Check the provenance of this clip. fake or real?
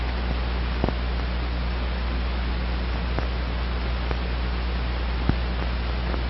real